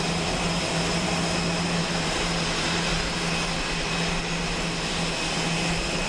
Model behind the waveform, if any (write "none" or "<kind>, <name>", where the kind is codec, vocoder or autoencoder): none